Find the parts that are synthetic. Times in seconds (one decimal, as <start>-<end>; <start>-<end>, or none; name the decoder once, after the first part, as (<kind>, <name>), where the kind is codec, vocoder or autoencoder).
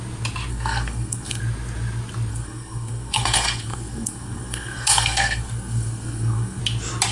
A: 0.5-1.4 (codec, SNAC); 2.3-6.6